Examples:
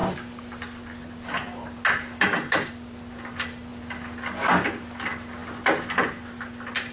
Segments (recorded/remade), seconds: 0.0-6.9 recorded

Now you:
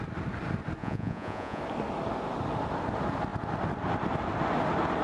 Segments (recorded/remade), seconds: 0.0-0.8 recorded; 0.8-1.6 remade; 1.6-5.0 recorded